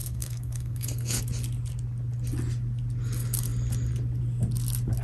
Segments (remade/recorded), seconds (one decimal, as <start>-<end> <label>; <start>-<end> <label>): 0.0-1.2 remade; 1.2-5.0 recorded